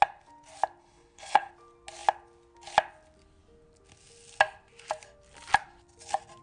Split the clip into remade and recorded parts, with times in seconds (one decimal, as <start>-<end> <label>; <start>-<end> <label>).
0.0-0.8 recorded; 0.8-1.5 remade; 1.5-6.4 recorded